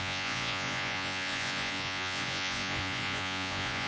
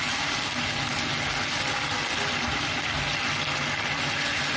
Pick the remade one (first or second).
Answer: first